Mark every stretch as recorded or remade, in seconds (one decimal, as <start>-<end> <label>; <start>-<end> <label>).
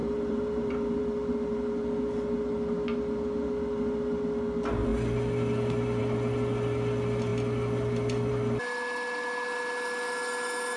0.0-1.0 remade; 1.0-10.8 recorded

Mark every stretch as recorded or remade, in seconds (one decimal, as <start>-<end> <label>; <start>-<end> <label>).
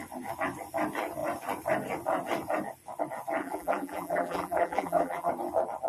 0.0-3.4 recorded; 3.4-5.3 remade; 5.3-5.9 recorded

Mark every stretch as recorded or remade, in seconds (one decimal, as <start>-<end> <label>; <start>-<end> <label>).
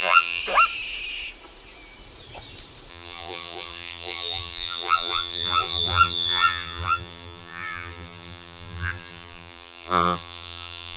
0.0-0.4 remade; 0.4-2.9 recorded; 2.9-11.0 remade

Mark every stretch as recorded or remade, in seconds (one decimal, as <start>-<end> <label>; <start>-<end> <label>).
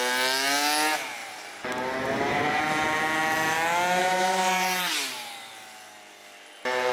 0.0-1.2 recorded; 1.2-2.6 remade; 2.6-4.0 recorded; 4.0-5.3 remade; 5.3-6.9 recorded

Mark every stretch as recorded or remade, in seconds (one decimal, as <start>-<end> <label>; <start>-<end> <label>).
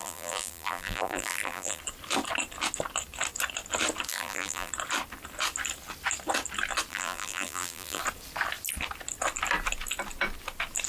0.0-1.8 remade; 1.8-4.1 recorded; 4.1-4.7 remade; 4.7-6.9 recorded; 6.9-8.0 remade; 8.0-10.9 recorded